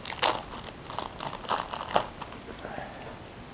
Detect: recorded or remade recorded